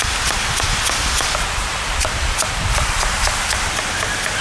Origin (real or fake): fake